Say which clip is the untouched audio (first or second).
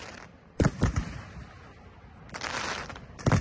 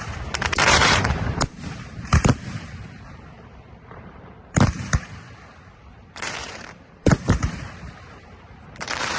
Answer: first